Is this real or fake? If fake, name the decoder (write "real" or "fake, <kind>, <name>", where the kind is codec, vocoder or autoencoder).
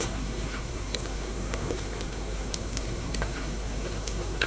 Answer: fake, codec, SNAC